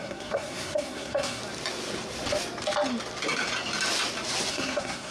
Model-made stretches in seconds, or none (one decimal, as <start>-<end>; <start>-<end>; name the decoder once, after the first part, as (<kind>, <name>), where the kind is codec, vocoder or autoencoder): 0.0-1.4 (codec, SNAC); 4.5-5.1

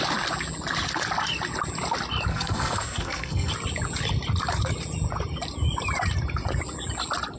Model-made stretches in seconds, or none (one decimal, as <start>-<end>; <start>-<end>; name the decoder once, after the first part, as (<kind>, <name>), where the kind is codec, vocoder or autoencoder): 2.3-3.5 (codec, SNAC)